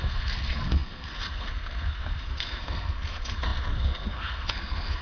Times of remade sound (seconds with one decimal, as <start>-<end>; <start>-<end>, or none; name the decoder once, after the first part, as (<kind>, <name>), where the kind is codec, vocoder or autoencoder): 0.0-5.0 (codec, SNAC)